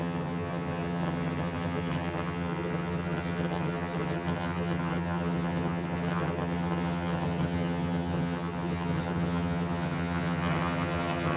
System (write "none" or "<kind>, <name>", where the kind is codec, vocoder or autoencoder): vocoder, HiFi-GAN